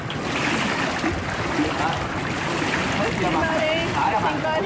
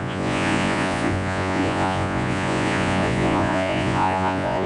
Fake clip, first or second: second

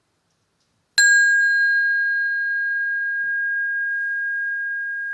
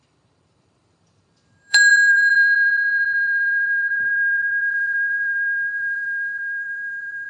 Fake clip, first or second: second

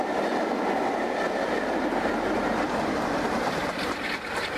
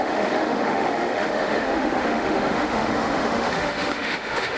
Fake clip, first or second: second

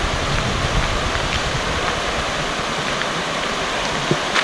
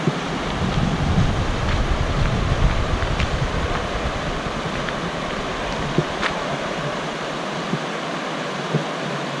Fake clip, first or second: second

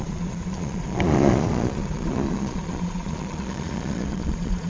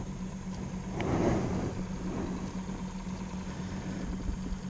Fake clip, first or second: first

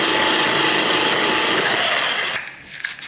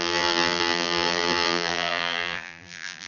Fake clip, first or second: second